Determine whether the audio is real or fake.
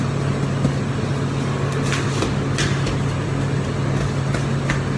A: real